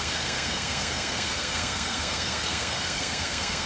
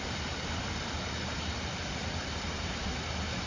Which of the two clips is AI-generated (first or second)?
first